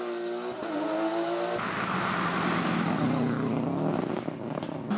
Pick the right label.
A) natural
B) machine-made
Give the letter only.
A